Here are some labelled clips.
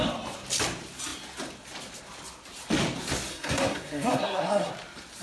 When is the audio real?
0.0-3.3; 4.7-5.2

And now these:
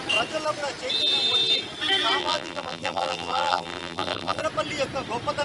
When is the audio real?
0.0-2.2; 4.4-5.4

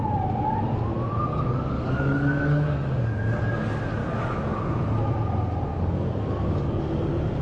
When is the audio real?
0.0-1.3; 3.5-4.0; 4.6-5.7; 6.8-7.4

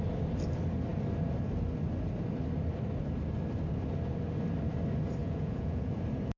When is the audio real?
0.0-5.2; 6.0-6.4